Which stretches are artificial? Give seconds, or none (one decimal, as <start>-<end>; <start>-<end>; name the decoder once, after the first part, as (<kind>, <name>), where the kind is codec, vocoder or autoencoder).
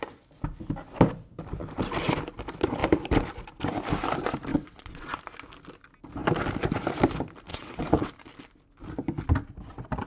4.5-5.2 (vocoder, WaveNeXt); 7.5-8.1